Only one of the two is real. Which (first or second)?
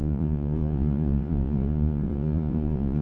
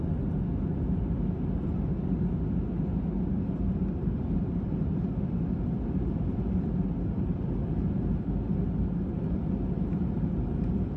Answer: second